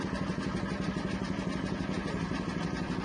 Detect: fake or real real